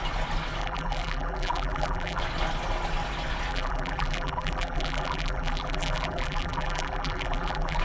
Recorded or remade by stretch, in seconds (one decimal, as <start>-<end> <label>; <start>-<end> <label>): 0.0-0.6 recorded; 0.6-2.2 remade; 2.2-3.5 recorded; 3.5-7.8 remade